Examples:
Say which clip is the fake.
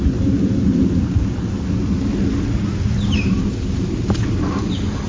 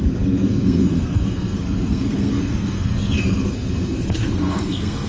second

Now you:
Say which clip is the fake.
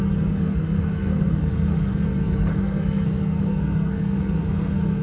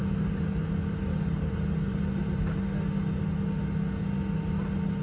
first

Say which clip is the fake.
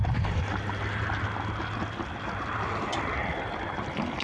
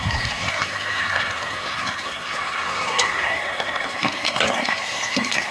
second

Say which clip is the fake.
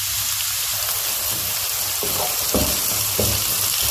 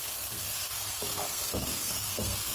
second